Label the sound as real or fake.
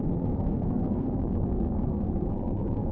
fake